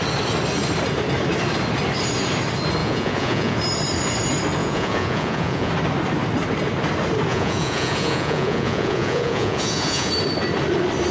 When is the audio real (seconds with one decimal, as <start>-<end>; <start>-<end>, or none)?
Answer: 0.0-2.8; 3.6-4.6; 5.7-7.3; 10.1-11.1